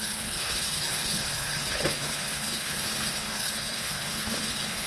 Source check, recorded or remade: remade